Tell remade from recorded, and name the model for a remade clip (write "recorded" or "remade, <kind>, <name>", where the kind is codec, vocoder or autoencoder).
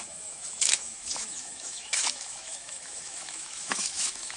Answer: remade, autoencoder, DAC-VAE